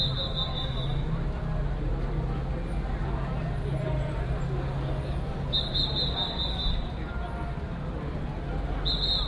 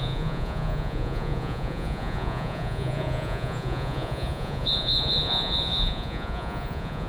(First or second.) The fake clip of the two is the second